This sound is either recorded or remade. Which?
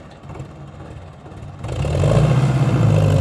recorded